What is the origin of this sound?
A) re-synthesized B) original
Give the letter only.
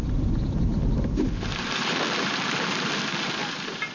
B